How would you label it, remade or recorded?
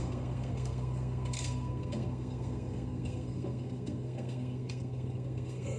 remade